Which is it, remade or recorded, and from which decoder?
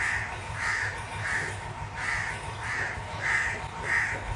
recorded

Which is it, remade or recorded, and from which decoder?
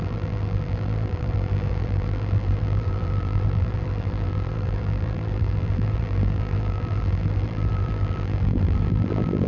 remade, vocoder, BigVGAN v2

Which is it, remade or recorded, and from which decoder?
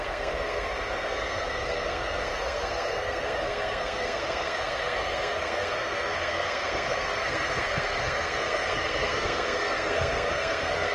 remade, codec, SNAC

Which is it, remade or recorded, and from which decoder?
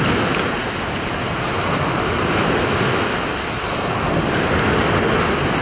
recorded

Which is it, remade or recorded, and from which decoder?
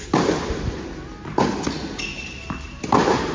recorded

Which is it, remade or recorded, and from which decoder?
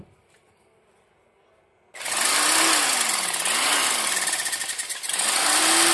recorded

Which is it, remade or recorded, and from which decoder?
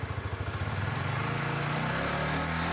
recorded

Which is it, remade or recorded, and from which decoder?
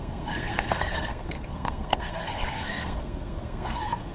remade, codec, SNAC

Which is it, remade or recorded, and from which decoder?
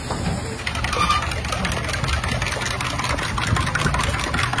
recorded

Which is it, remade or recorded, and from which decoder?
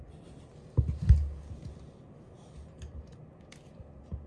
recorded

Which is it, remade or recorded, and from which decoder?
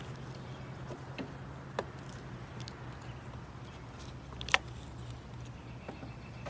recorded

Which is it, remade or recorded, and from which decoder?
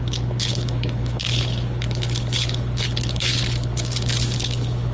remade, codec, HILCodec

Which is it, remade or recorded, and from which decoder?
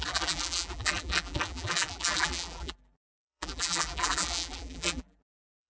remade, vocoder, BigVGAN v2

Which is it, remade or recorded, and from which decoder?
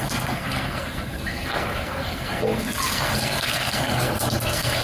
remade, codec, SNAC